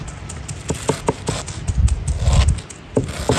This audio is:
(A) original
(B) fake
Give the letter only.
A